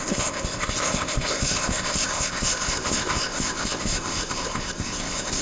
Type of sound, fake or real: fake